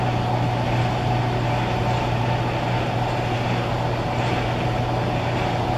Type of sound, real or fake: real